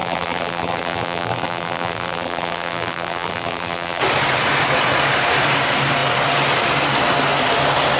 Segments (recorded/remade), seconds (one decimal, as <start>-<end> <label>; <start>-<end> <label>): 0.0-4.0 remade; 4.0-8.0 recorded